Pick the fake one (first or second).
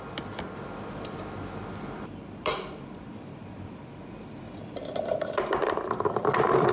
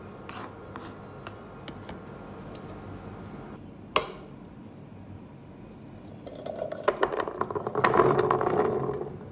first